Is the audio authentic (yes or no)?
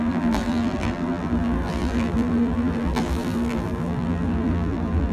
no